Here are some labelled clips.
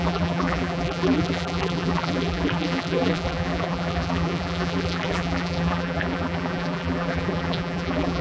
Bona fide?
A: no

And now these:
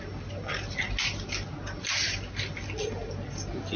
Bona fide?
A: yes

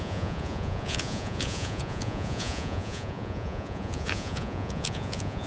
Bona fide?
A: no